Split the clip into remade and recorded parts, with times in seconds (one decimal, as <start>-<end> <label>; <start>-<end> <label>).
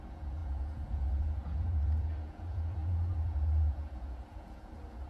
0.0-5.1 remade